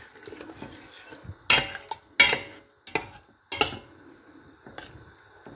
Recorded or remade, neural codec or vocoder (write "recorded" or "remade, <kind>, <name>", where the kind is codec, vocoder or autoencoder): recorded